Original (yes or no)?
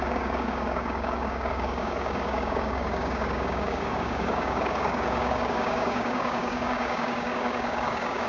no